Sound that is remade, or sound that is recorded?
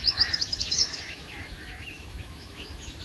remade